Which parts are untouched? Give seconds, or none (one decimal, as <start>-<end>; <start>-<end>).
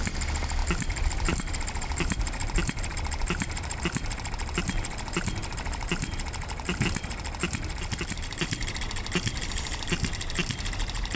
0.0-0.6; 3.8-11.2